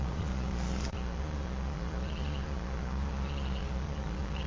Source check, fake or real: fake